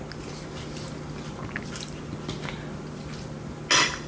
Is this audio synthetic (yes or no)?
no